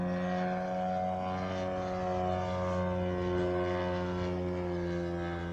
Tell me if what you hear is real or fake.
real